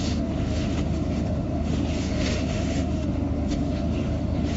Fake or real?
fake